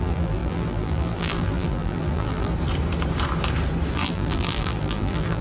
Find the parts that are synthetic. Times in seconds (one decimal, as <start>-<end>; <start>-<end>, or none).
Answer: 0.0-2.5; 3.9-5.4